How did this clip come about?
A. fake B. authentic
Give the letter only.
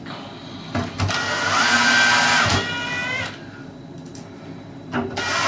B